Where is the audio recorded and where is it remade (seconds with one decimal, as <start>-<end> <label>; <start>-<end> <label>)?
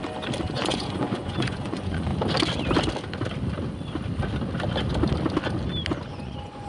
0.0-0.5 recorded; 0.5-2.1 remade; 2.1-6.1 recorded; 6.1-6.7 remade